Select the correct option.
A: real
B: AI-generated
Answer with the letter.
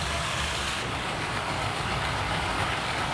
B